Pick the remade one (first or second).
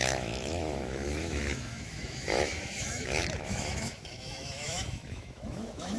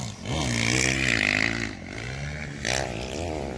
first